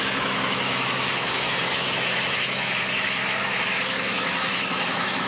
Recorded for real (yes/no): no